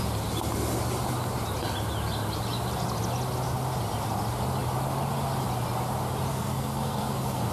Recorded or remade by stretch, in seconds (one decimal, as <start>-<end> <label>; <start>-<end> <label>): 0.0-6.3 recorded; 6.3-7.5 remade